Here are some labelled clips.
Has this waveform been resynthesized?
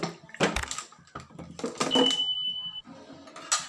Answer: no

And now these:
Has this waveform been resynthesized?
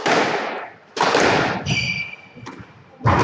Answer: no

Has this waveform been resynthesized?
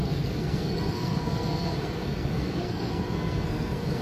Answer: yes